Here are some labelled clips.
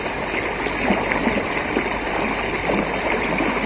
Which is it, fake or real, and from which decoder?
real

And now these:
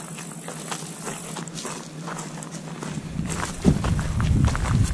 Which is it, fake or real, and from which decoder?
real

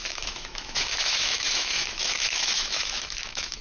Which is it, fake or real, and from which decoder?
fake, autoencoder, DAC-VAE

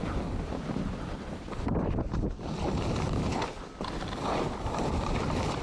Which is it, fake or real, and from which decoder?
real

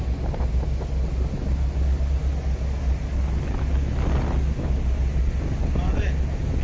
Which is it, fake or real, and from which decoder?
real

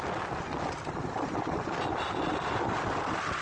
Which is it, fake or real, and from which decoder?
real